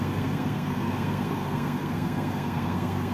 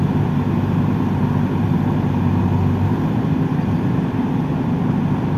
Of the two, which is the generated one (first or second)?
first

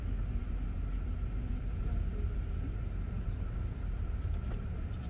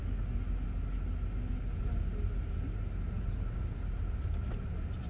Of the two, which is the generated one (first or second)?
first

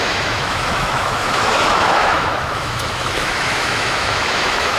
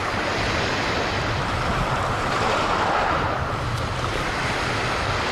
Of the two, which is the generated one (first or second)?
first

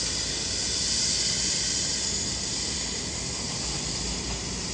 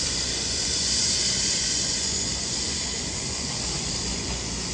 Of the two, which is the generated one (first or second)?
second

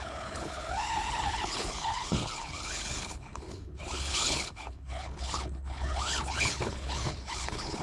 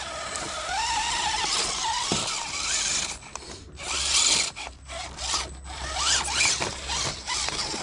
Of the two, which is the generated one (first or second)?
first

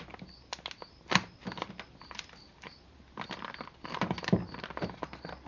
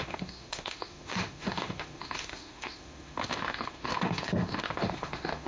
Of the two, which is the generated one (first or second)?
second